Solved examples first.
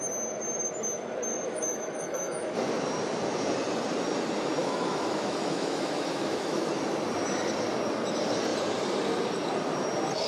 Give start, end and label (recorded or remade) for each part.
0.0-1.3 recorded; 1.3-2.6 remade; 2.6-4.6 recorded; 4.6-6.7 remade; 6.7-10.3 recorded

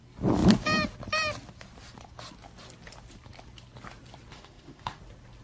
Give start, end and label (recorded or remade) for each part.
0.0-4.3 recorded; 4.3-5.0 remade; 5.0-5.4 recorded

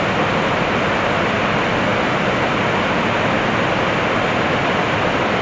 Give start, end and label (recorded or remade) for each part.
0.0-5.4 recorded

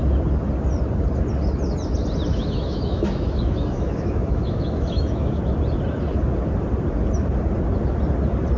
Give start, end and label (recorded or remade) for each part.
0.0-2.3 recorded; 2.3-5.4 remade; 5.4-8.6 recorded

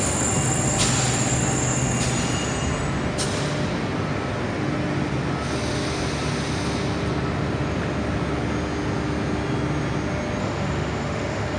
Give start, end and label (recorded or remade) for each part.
0.0-10.4 recorded; 10.4-11.6 remade

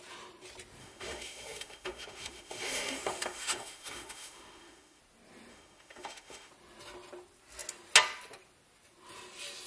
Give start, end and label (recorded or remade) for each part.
0.0-0.8 recorded; 0.8-5.0 remade; 5.0-5.5 recorded; 5.5-6.5 remade; 6.5-9.7 recorded

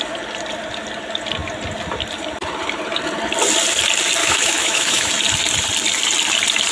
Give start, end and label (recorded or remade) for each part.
0.0-4.2 recorded; 4.2-5.1 remade; 5.1-6.7 recorded